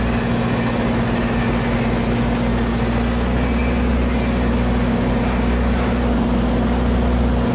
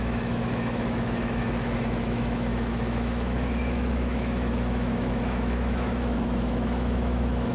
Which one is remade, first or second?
second